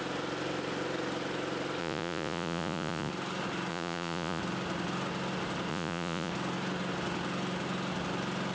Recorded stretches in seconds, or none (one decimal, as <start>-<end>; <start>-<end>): 0.0-1.8; 3.1-3.7; 4.4-5.7; 6.3-8.5